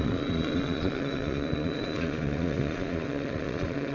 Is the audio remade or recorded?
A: remade